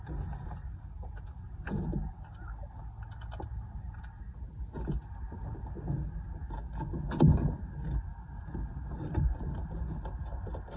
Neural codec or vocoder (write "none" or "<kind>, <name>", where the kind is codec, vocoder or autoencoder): none